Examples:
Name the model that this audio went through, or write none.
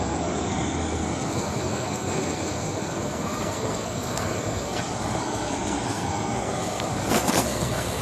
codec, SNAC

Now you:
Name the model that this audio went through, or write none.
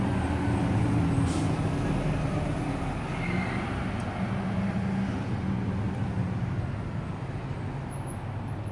none